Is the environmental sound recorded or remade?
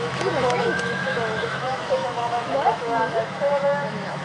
remade